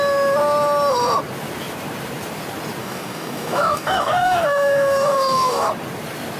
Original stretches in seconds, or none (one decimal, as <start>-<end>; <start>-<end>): 0.0-2.8; 5.7-6.4